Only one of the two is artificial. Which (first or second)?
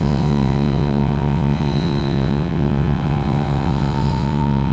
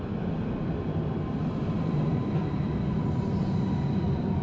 first